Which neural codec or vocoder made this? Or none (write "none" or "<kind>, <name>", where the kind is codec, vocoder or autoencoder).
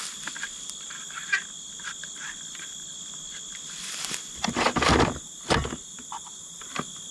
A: none